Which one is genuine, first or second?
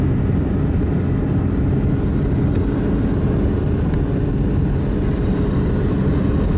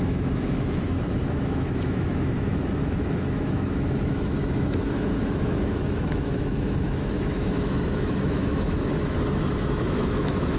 first